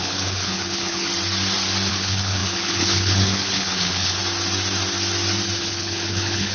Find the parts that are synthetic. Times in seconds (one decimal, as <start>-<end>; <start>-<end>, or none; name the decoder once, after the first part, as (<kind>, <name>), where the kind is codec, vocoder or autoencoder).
0.0-1.1 (codec, HILCodec); 1.9-4.2; 5.6-6.5